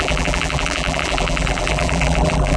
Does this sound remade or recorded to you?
remade